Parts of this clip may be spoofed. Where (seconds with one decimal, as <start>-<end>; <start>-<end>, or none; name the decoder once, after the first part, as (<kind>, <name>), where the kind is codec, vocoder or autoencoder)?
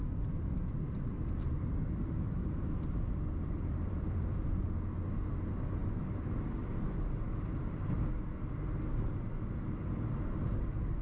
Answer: 1.1-4.6 (vocoder, BigVGAN v2); 5.8-8.1